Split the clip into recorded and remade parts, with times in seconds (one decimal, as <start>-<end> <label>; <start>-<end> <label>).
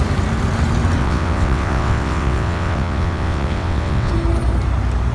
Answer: 0.0-1.0 recorded; 1.0-4.1 remade; 4.1-5.1 recorded